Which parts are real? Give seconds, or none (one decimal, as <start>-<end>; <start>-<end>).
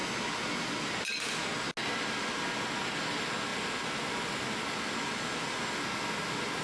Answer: 0.0-6.6